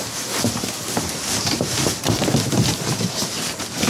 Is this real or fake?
real